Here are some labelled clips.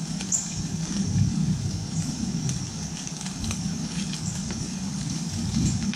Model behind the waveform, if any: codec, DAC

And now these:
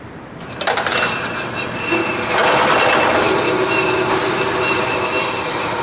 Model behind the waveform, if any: none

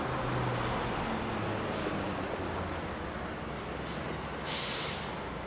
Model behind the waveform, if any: none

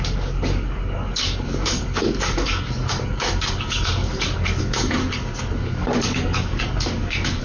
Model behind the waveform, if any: codec, DAC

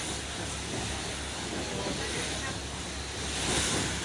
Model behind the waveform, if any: none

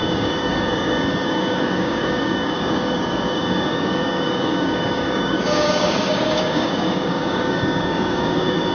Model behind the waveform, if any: codec, DAC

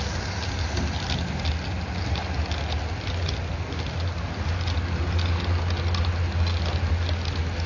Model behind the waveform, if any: none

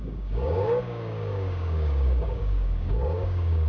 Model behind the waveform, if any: codec, DAC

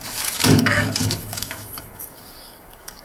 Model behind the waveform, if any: codec, DAC